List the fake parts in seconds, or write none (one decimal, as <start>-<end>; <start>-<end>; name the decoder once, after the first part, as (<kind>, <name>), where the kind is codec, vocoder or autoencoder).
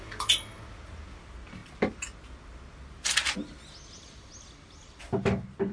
none